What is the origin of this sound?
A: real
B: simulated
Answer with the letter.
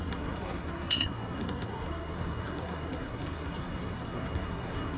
B